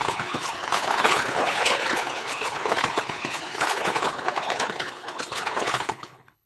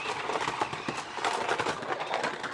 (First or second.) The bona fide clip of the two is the second